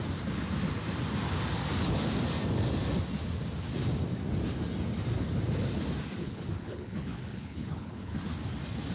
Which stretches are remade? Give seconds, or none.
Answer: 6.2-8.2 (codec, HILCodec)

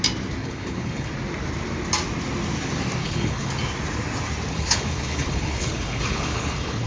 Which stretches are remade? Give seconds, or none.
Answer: 0.4-1.1 (codec, HILCodec); 3.0-3.5; 4.5-6.9

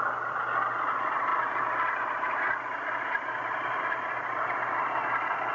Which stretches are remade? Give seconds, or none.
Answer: none

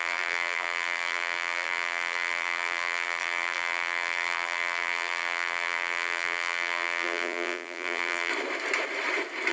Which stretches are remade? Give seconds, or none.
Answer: 0.0-8.3 (vocoder, BigVGAN v2)